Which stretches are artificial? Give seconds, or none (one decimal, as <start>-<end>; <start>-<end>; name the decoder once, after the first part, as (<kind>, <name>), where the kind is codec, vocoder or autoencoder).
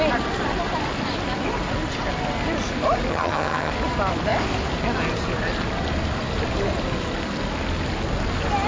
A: 3.1-3.7 (vocoder, HiFi-GAN)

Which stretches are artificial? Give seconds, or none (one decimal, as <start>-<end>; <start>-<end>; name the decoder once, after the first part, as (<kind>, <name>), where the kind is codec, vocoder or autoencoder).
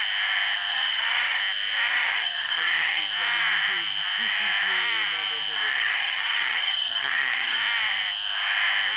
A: 0.7-1.4 (vocoder, HiFi-GAN); 1.9-3.0; 5.7-7.6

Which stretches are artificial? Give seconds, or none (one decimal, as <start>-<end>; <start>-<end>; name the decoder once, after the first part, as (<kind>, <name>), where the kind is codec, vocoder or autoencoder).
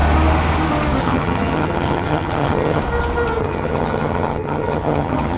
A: 1.0-2.8 (vocoder, HiFi-GAN); 3.4-5.4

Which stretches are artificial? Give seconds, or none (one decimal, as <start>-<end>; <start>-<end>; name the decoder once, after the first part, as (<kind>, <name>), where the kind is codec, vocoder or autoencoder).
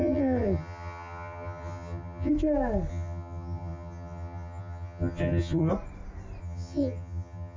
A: 0.0-2.3 (vocoder, HiFi-GAN); 2.9-5.7; 6.4-7.6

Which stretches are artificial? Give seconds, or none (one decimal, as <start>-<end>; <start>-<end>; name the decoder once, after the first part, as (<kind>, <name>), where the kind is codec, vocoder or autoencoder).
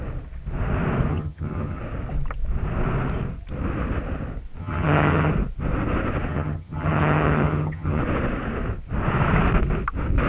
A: 1.1-1.8 (vocoder, HiFi-GAN); 4.6-5.3; 6.3-8.0